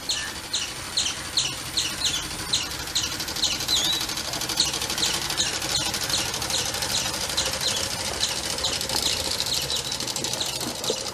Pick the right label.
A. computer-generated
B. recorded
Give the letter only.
B